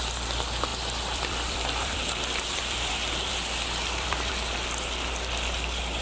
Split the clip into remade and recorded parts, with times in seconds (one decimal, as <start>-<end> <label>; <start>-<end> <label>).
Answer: 0.0-0.7 recorded; 0.7-4.3 remade; 4.3-6.0 recorded